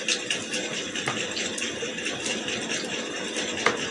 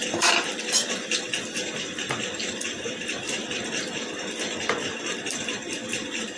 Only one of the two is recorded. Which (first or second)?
first